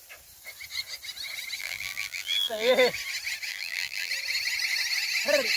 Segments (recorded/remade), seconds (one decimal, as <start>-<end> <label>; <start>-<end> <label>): 0.0-1.6 recorded; 1.6-2.7 remade; 2.7-3.5 recorded; 3.5-4.1 remade; 4.1-5.6 recorded